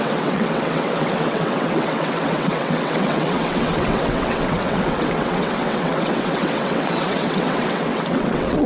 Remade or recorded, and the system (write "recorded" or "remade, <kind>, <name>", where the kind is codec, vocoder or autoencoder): remade, vocoder, WaveNeXt